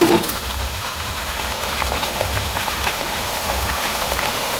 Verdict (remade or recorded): remade